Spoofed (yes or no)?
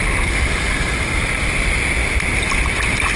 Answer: no